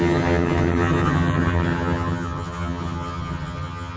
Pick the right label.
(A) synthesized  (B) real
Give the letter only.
A